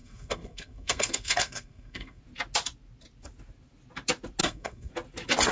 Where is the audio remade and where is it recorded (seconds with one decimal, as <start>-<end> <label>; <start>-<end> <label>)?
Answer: 0.0-2.2 remade; 2.2-4.4 recorded; 4.4-4.9 remade; 4.9-5.5 recorded